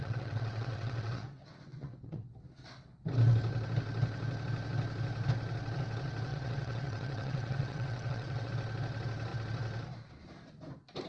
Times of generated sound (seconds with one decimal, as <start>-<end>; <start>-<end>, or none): 0.0-2.3; 6.3-8.5